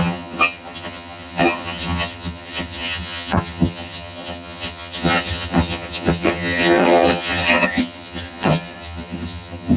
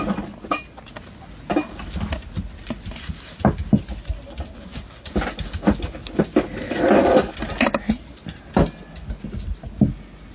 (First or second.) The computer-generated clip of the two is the first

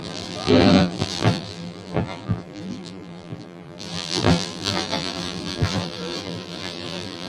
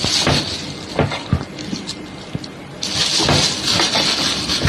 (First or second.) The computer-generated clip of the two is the first